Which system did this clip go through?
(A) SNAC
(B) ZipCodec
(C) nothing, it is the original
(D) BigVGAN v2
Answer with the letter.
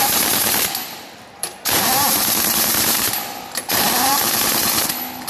D